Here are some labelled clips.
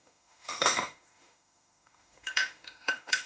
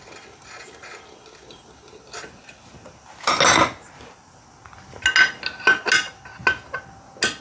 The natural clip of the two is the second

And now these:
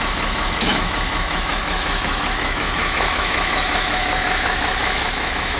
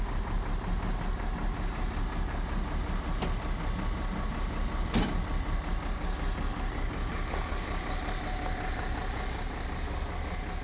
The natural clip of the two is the second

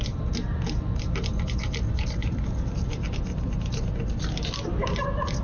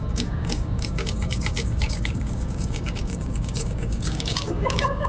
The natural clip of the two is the first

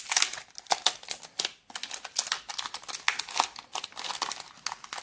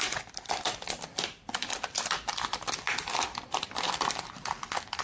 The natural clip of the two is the first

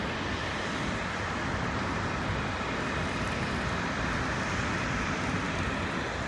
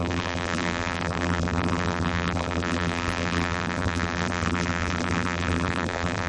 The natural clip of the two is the first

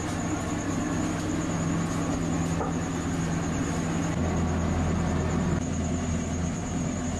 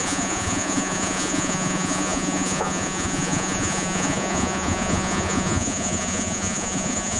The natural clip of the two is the first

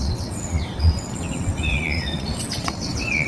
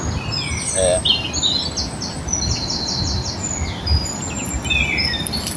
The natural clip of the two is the second